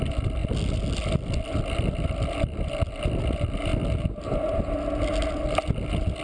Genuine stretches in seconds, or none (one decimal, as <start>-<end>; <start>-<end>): 0.0-6.2